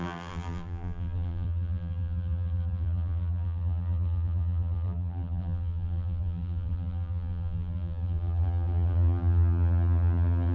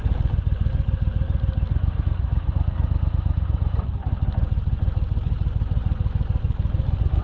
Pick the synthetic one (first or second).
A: first